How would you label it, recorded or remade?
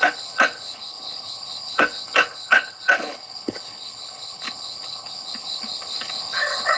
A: remade